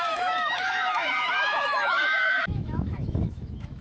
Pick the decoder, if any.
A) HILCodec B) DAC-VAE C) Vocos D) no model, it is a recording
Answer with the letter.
B